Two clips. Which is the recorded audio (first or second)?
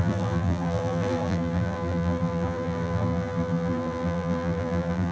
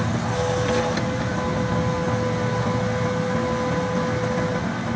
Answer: second